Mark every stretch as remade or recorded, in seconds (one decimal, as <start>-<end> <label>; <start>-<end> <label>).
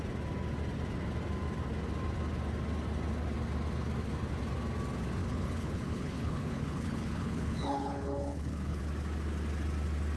0.0-5.2 recorded; 5.2-8.8 remade; 8.8-10.2 recorded